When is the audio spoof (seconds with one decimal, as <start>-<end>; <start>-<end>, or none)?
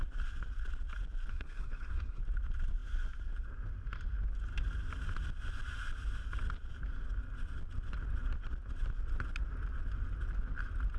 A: 1.3-2.2